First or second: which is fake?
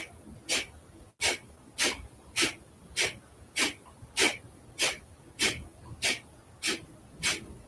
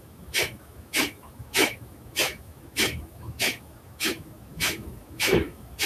second